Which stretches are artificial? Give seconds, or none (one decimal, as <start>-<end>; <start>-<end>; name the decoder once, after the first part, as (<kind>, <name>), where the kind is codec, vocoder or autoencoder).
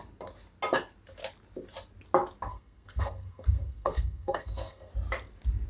2.5-4.9 (codec, SNAC)